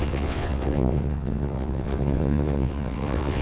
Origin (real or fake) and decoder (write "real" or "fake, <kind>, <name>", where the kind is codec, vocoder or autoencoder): fake, vocoder, WaveNeXt